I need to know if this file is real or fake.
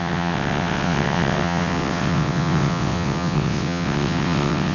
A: fake